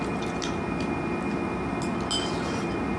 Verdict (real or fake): real